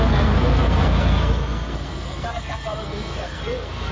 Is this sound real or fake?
fake